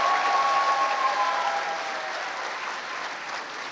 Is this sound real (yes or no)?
yes